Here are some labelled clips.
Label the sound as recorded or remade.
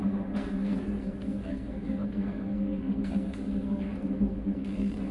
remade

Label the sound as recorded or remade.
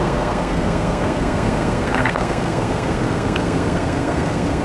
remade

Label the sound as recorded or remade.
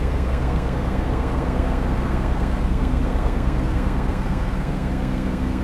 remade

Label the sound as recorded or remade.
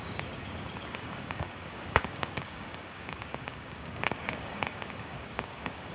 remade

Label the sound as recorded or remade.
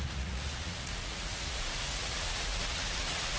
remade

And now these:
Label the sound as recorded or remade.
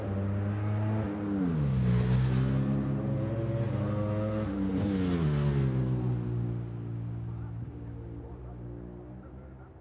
recorded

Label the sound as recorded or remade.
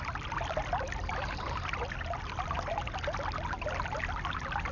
recorded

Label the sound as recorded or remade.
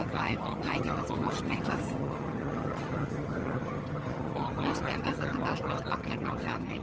remade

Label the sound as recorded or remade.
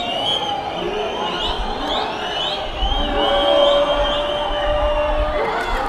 recorded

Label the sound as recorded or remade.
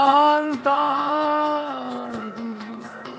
remade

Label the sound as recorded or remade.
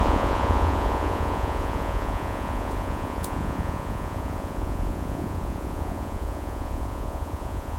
remade